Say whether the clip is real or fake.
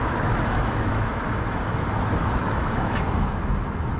fake